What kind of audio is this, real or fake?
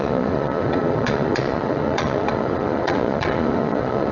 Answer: fake